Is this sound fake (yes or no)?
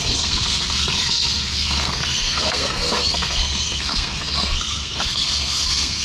yes